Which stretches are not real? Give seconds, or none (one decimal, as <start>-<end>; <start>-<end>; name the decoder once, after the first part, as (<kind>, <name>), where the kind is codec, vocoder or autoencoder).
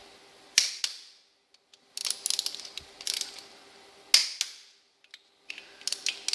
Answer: none